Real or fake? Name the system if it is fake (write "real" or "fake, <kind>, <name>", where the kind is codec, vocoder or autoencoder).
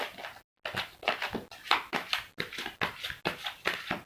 real